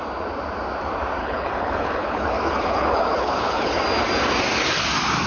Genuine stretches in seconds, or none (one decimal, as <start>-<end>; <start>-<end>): 0.0-1.2; 3.8-5.3